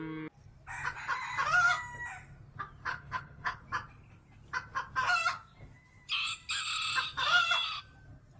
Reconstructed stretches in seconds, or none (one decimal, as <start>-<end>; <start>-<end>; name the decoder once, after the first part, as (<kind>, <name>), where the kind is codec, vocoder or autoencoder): 2.9-3.6 (codec, HILCodec)